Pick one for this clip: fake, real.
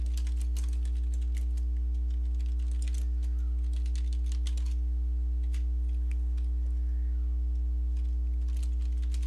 real